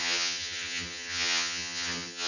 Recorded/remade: remade